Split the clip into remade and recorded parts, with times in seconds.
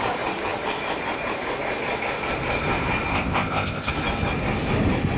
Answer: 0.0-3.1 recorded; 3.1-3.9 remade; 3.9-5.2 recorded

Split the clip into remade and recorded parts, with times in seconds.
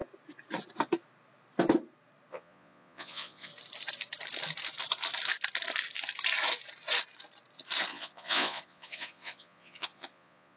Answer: 0.0-2.3 recorded; 2.3-3.5 remade; 3.5-7.9 recorded; 7.9-10.6 remade